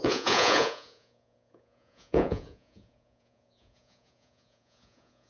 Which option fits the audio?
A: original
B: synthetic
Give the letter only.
B